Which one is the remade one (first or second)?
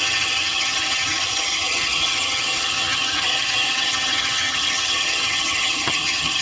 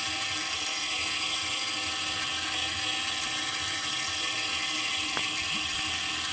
first